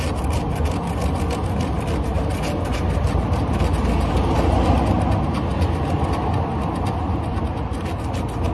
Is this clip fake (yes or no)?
no